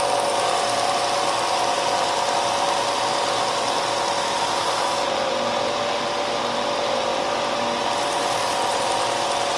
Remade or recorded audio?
recorded